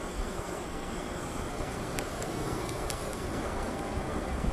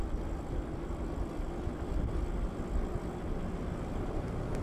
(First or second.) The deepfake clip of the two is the first